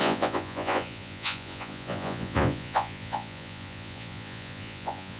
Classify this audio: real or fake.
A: fake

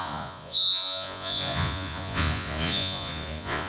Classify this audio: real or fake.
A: fake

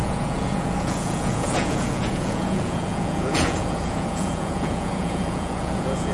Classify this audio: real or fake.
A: fake